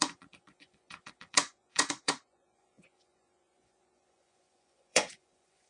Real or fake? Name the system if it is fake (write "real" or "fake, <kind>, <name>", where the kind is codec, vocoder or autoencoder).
fake, vocoder, Vocos